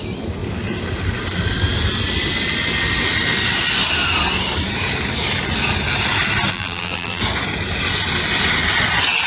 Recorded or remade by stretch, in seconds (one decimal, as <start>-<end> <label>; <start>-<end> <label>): 0.0-6.5 recorded; 6.5-7.2 remade; 7.2-9.3 recorded